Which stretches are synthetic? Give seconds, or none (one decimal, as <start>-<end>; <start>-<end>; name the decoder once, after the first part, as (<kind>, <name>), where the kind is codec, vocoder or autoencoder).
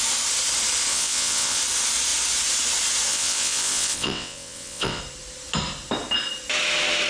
0.9-1.6 (vocoder, WaveNeXt); 3.1-5.0